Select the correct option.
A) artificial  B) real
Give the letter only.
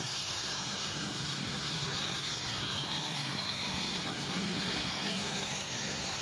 A